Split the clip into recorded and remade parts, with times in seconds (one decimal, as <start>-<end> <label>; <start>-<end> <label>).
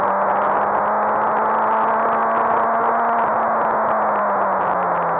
0.0-5.2 recorded